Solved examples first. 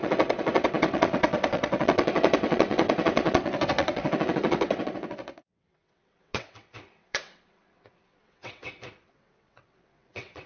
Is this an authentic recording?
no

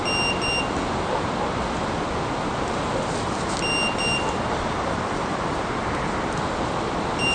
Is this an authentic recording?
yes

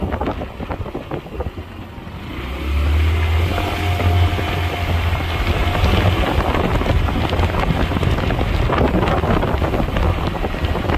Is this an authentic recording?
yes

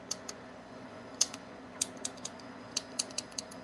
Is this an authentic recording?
no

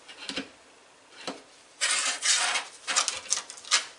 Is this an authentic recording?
yes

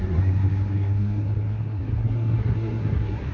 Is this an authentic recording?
no